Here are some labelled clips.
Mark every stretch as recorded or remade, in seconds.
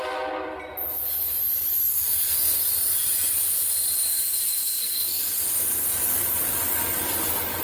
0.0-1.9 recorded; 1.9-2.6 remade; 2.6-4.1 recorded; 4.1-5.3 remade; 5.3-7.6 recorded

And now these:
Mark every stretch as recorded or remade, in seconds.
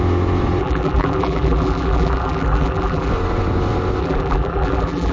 0.0-0.6 recorded; 0.6-3.1 remade; 3.1-4.0 recorded; 4.0-5.1 remade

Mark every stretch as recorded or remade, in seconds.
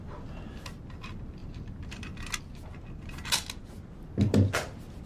0.0-5.1 recorded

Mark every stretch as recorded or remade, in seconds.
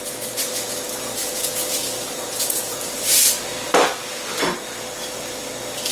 0.0-1.2 recorded; 1.2-2.8 remade; 2.8-5.9 recorded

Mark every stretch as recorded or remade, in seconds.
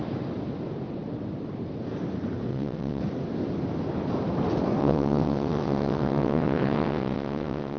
0.0-2.5 recorded; 2.5-3.0 remade; 3.0-4.8 recorded; 4.8-7.8 remade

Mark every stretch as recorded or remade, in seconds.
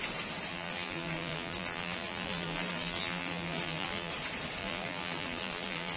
0.0-0.5 recorded; 0.5-4.1 remade; 4.1-4.6 recorded; 4.6-6.0 remade